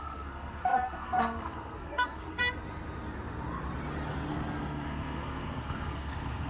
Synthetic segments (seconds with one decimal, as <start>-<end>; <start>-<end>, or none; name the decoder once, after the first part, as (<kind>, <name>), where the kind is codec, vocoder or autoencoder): 0.0-2.4 (codec, SNAC); 4.6-6.5